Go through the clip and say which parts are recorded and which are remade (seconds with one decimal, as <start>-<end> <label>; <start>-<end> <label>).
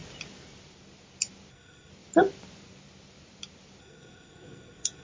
0.0-1.5 recorded; 1.5-1.9 remade; 1.9-3.8 recorded; 3.8-5.0 remade